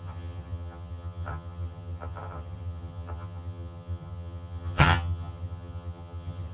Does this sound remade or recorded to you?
remade